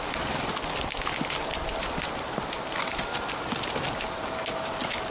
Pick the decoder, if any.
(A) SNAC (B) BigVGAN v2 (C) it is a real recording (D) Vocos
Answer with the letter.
C